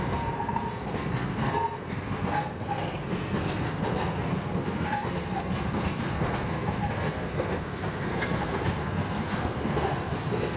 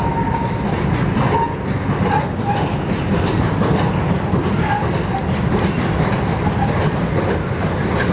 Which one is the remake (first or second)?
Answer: first